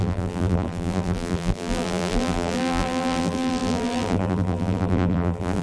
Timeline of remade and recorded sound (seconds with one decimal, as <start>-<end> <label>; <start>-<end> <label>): 0.0-5.6 remade